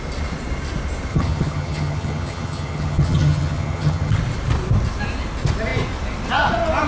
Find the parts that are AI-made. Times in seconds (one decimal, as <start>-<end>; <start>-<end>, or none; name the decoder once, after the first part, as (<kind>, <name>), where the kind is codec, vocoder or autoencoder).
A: 1.1-4.1 (vocoder, HiFi-GAN)

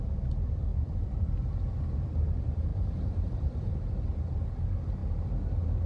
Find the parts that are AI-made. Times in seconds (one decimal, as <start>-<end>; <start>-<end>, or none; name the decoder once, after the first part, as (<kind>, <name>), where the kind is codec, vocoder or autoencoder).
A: none

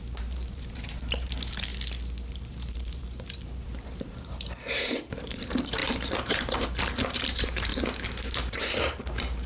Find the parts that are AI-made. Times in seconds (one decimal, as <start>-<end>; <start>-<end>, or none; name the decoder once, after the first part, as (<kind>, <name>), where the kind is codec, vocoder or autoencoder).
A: 0.0-1.7 (vocoder, BigVGAN v2); 2.3-7.7; 8.4-9.5

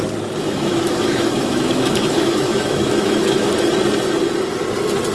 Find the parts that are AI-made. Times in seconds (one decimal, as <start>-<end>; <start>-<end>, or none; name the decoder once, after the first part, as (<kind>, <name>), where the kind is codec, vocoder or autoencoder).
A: 0.4-3.5 (autoencoder, DAC-VAE)

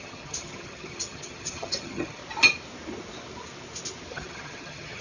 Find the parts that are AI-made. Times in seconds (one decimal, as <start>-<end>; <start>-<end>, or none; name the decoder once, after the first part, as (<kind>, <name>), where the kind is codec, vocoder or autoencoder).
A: 0.0-2.2 (vocoder, HiFi-GAN); 4.1-5.0

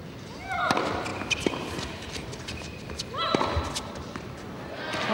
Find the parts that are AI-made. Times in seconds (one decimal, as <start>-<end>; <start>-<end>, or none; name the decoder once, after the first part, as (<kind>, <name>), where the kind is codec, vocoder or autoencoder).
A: none